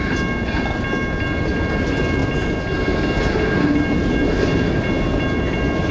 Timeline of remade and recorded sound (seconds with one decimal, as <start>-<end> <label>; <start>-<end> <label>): 0.0-5.9 recorded